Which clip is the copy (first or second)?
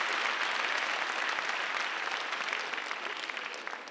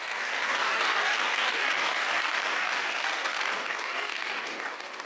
second